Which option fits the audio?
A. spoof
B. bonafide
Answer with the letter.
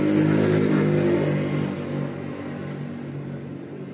B